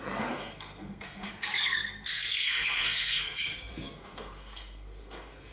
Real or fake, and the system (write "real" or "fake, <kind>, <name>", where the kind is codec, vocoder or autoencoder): fake, codec, SNAC